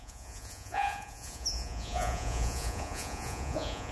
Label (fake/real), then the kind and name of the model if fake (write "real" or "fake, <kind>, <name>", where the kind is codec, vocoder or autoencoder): fake, vocoder, Vocos